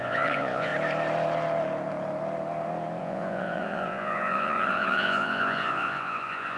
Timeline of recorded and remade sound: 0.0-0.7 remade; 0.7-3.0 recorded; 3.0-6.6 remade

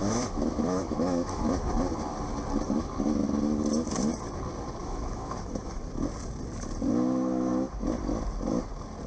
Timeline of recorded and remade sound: 0.0-1.5 remade; 1.5-4.8 recorded; 4.8-5.9 remade; 5.9-9.1 recorded

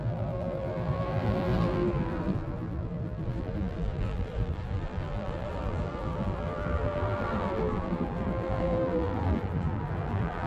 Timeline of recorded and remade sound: 0.0-10.5 remade

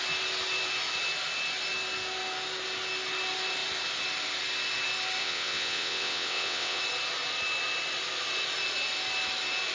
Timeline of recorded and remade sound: 0.0-5.2 recorded; 5.2-6.8 remade; 6.8-9.7 recorded

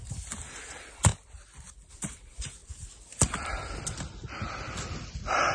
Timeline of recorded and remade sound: 0.0-5.5 recorded